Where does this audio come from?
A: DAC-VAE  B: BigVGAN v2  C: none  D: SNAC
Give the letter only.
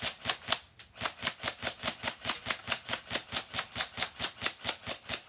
C